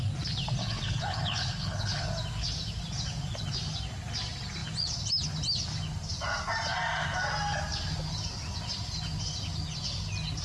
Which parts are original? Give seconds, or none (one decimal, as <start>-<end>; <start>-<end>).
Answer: 0.0-0.6; 2.1-10.4